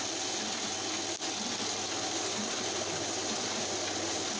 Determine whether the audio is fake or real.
real